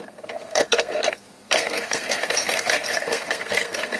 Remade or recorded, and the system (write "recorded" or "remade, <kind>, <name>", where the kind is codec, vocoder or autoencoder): remade, codec, SNAC